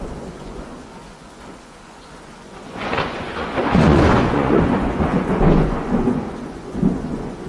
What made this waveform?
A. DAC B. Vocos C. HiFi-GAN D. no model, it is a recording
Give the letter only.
B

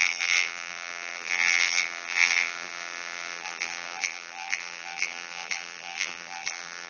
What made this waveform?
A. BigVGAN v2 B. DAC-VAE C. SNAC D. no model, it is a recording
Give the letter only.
A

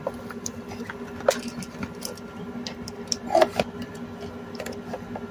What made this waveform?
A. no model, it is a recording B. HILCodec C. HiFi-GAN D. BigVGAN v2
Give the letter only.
D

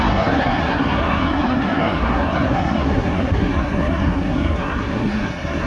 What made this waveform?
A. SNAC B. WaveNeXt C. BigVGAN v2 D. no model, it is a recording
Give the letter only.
A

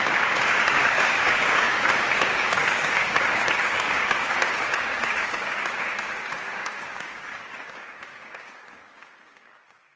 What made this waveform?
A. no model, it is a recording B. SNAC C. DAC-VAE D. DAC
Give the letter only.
D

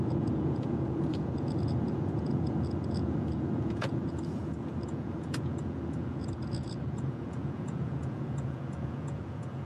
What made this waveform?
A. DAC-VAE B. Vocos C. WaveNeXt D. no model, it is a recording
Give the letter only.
B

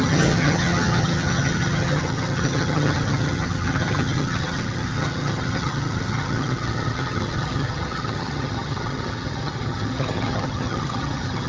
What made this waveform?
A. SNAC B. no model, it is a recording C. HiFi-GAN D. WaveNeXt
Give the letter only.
C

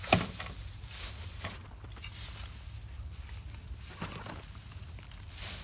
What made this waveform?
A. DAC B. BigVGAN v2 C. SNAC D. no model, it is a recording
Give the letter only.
D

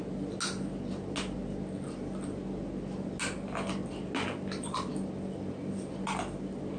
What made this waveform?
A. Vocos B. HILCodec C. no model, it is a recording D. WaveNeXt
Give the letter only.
C